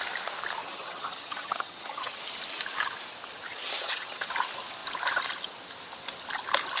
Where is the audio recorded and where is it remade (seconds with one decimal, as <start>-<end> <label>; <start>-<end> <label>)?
0.0-0.6 recorded; 0.6-2.2 remade; 2.2-3.5 recorded; 3.5-4.3 remade; 4.3-6.8 recorded